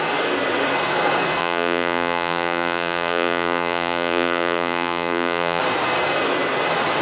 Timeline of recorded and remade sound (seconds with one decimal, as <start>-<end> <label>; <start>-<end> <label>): 0.0-1.4 recorded; 1.4-5.6 remade; 5.6-7.0 recorded